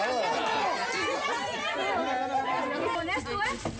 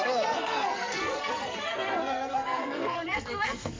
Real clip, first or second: first